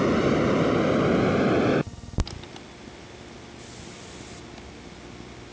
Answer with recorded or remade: recorded